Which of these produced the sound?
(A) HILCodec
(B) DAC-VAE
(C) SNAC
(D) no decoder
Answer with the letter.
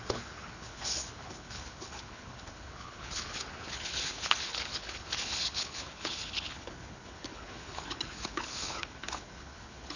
A